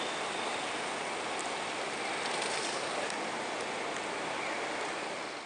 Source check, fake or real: real